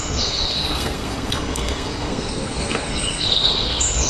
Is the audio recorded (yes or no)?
no